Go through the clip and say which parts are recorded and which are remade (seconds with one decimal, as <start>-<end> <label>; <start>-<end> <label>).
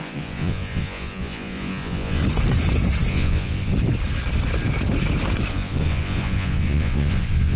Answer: 0.0-2.2 remade; 2.2-3.1 recorded; 3.1-3.7 remade; 3.7-5.5 recorded; 5.5-7.6 remade